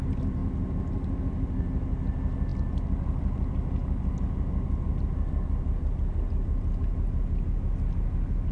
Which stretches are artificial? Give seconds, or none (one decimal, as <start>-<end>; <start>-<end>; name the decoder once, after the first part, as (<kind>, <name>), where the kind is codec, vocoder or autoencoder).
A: none